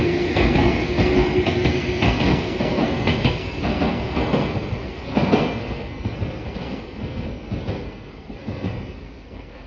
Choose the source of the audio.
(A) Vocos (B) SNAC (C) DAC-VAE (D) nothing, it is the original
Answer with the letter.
B